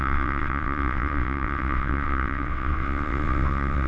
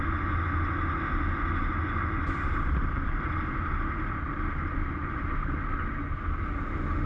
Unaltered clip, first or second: second